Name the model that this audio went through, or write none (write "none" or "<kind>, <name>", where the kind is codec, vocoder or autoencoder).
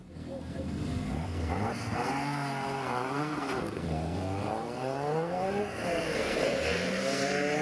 codec, SNAC